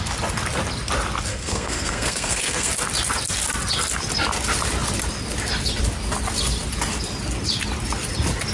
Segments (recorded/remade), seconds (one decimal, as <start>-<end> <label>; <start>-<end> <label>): 0.0-1.3 recorded; 1.3-2.7 remade; 2.7-8.5 recorded